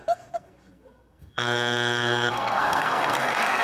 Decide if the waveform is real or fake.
fake